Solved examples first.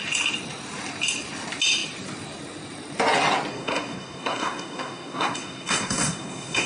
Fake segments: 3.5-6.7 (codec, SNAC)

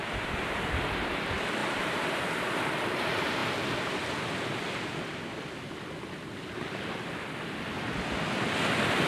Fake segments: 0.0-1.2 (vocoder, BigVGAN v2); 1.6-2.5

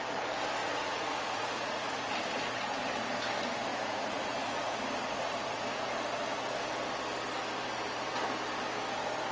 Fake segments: 0.6-2.1 (vocoder, Vocos); 3.7-5.9

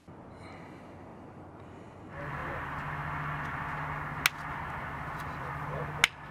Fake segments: none

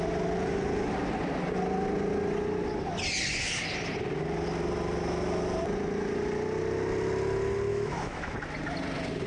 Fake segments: 7.7-8.3 (autoencoder, DAC-VAE)